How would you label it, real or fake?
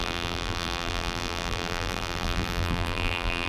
fake